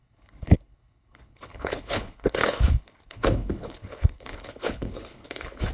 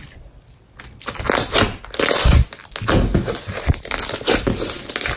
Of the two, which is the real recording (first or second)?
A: second